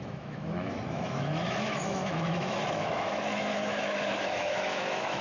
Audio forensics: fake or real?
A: fake